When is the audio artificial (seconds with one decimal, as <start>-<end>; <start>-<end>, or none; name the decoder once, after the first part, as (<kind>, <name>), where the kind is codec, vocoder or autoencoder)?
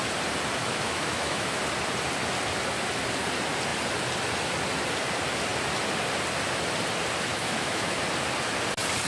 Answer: 0.6-1.6 (autoencoder, DAC-VAE); 7.3-8.0